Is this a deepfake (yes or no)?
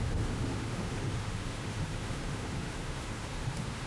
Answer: yes